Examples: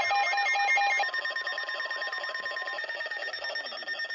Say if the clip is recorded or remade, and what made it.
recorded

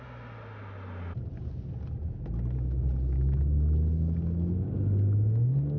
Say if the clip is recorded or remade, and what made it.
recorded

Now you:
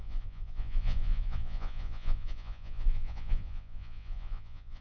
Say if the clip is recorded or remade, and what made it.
remade, vocoder, Vocos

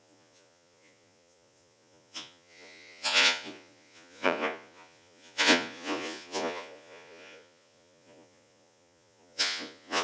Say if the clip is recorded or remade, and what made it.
remade, vocoder, Vocos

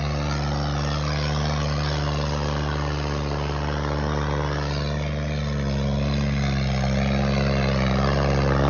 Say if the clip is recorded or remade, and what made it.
recorded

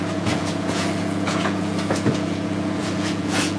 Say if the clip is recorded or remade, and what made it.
remade, vocoder, Vocos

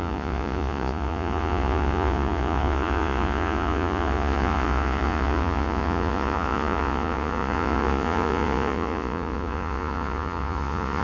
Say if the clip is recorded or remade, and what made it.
remade, vocoder, Vocos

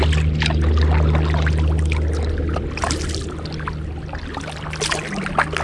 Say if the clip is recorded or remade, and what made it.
recorded